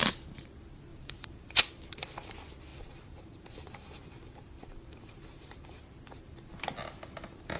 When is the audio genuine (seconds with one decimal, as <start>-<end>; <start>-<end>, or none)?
0.0-0.9; 1.6-2.7; 5.8-7.6